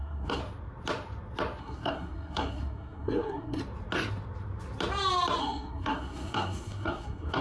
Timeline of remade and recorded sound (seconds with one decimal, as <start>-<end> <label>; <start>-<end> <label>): 0.0-0.4 remade; 0.4-1.6 recorded; 1.6-3.6 remade; 3.6-5.4 recorded; 5.4-7.4 remade